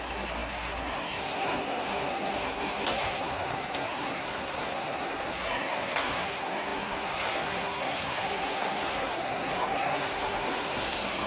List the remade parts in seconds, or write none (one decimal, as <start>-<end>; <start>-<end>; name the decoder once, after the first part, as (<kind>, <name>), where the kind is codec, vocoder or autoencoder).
0.0-11.3 (codec, SNAC)